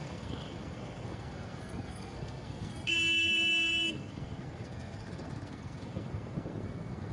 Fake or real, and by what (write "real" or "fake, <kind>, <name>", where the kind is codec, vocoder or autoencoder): fake, codec, SNAC